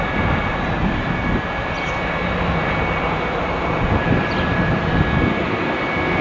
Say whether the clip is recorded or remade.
recorded